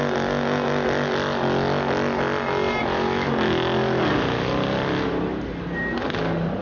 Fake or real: real